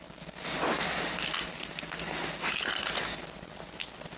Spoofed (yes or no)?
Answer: no